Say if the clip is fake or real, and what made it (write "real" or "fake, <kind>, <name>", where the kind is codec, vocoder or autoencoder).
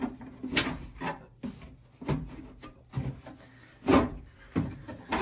real